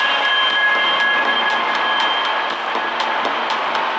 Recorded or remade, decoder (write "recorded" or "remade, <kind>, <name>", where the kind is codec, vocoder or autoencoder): recorded